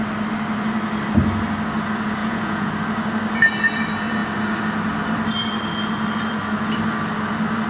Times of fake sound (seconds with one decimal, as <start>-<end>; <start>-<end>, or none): 2.2-2.7

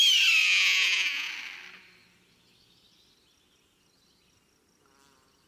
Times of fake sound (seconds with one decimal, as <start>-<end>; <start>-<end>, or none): 0.4-1.3

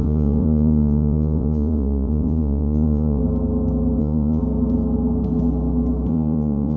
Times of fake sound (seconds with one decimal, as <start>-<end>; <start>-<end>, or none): 0.0-3.2; 4.0-4.4; 6.1-6.8

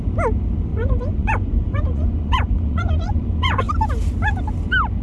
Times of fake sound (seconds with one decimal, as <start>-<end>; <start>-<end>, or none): 0.7-3.7

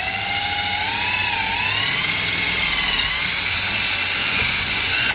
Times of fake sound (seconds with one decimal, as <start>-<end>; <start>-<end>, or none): 4.2-5.1

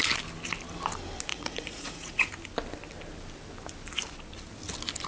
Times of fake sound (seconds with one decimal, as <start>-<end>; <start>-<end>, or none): 1.3-2.3

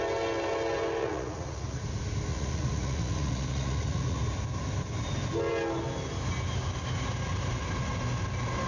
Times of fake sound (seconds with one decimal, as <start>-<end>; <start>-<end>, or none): 1.0-1.8; 2.3-4.2